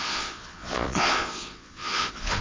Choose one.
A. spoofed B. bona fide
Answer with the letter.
A